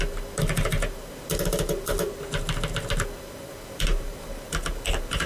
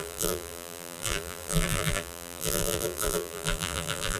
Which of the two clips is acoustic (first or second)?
first